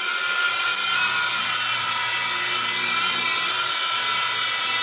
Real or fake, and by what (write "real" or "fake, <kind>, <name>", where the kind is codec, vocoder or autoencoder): real